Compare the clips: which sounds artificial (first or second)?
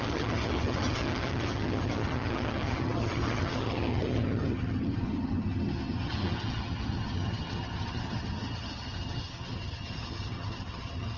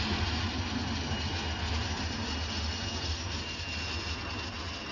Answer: first